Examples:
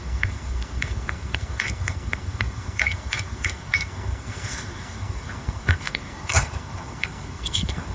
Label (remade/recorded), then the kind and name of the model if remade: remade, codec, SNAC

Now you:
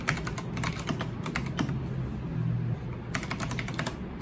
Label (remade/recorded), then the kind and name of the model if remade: recorded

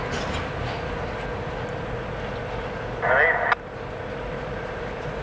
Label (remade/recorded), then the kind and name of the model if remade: recorded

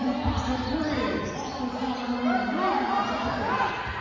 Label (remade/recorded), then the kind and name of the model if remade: recorded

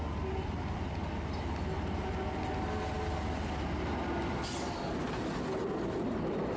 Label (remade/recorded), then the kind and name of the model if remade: recorded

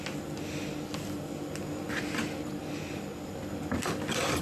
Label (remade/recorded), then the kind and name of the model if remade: recorded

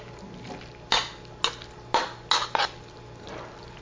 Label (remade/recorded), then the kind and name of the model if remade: recorded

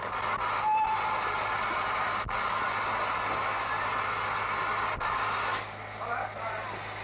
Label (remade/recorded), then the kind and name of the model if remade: recorded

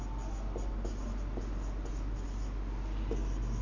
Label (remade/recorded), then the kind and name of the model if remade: recorded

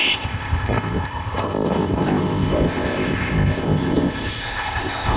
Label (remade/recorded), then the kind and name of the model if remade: remade, codec, ZipCodec